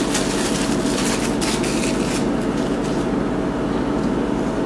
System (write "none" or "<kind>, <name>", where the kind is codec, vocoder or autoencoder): none